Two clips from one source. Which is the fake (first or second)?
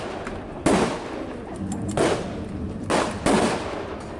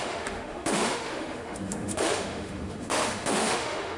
second